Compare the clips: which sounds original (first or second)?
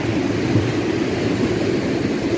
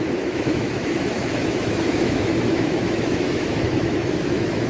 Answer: first